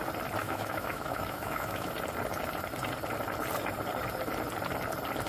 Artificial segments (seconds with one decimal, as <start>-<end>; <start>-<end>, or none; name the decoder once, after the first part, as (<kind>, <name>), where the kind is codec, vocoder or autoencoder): 0.4-1.9 (autoencoder, DAC-VAE)